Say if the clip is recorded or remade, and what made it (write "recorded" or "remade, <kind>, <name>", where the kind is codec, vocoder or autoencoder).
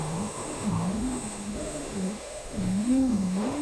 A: remade, autoencoder, DAC-VAE